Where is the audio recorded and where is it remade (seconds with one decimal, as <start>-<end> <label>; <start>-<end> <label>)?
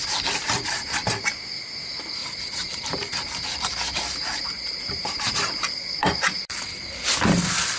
0.0-2.2 recorded; 2.2-6.9 remade; 6.9-7.8 recorded